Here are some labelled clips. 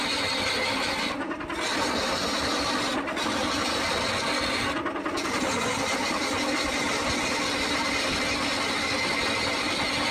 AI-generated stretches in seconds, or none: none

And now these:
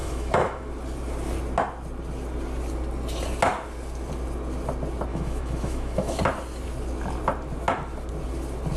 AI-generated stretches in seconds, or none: 0.0-0.7; 5.1-6.2

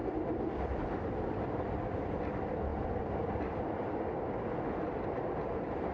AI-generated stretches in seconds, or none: none

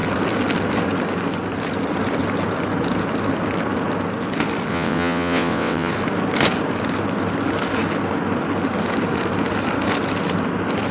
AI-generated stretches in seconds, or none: 4.7-5.9

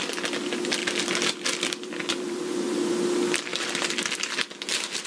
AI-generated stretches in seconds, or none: 0.8-2.9; 3.5-4.1